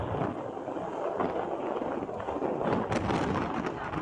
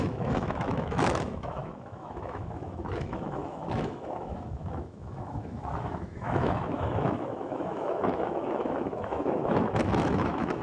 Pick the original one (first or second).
first